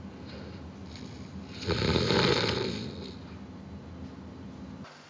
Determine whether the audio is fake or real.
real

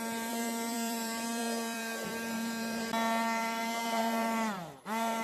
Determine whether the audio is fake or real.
fake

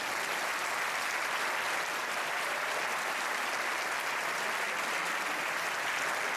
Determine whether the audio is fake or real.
fake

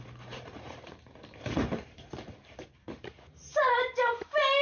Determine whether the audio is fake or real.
fake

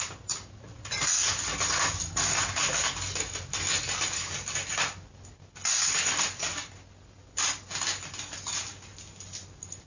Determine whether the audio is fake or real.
real